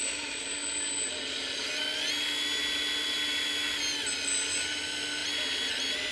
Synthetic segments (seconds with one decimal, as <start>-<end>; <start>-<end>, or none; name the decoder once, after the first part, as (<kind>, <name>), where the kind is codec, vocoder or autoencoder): none